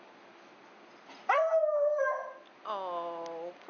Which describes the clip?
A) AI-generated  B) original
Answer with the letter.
B